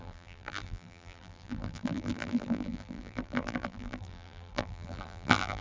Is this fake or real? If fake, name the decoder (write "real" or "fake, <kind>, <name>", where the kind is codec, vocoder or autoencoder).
fake, vocoder, BigVGAN v2